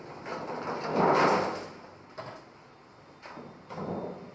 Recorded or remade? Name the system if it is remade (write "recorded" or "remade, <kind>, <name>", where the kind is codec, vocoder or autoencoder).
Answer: recorded